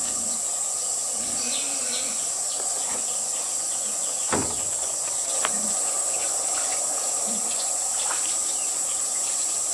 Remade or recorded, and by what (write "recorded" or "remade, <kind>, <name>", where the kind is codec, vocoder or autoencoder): remade, vocoder, Vocos